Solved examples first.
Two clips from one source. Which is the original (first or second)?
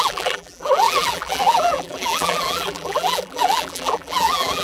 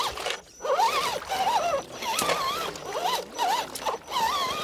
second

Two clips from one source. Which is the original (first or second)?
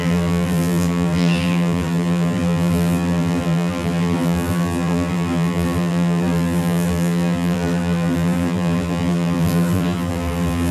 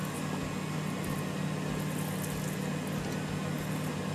second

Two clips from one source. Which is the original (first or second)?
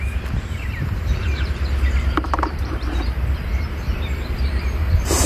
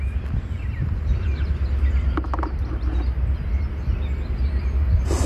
second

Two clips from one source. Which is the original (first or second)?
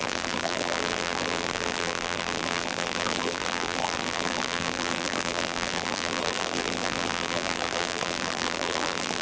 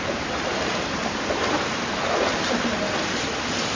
second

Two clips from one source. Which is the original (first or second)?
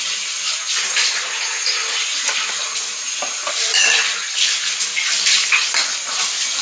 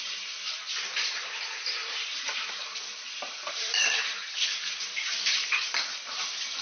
first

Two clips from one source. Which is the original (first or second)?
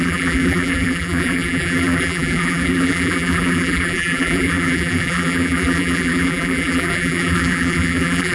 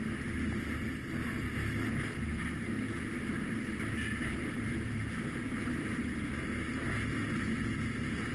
second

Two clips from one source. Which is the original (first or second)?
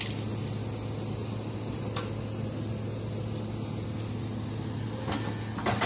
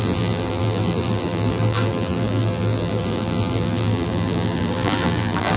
first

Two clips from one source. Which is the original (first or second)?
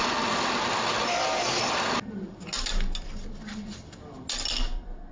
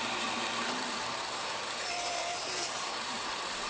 first